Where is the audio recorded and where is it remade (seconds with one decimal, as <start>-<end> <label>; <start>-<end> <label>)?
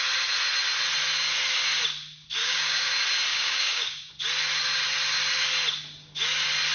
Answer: 0.0-2.4 recorded; 2.4-2.9 remade; 2.9-3.3 recorded; 3.3-4.1 remade; 4.1-6.7 recorded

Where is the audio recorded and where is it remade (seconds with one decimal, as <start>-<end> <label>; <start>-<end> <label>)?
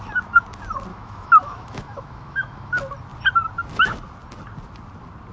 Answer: 0.0-0.9 recorded; 0.9-2.7 remade; 2.7-5.3 recorded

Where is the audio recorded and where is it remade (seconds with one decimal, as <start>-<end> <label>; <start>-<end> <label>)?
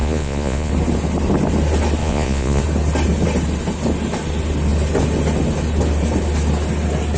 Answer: 0.0-0.7 remade; 0.7-2.0 recorded; 2.0-2.6 remade; 2.6-7.2 recorded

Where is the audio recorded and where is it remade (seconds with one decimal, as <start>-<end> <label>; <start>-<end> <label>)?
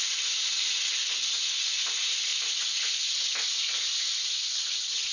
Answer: 0.0-5.1 recorded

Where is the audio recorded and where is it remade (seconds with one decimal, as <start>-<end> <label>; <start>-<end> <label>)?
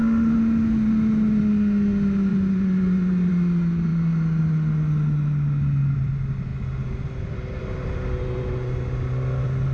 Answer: 0.0-2.3 recorded; 2.3-3.3 remade; 3.3-9.7 recorded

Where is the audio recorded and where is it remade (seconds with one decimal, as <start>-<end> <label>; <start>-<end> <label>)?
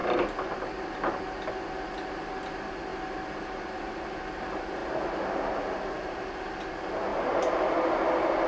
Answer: 0.0-8.5 recorded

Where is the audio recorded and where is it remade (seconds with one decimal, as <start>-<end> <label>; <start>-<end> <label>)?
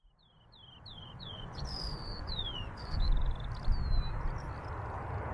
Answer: 0.0-0.9 recorded; 0.9-3.1 remade; 3.1-5.3 recorded